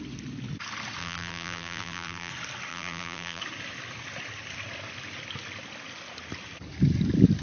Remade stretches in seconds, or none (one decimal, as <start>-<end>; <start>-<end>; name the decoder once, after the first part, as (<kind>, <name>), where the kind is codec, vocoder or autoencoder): 1.0-2.3 (vocoder, BigVGAN v2); 2.7-3.4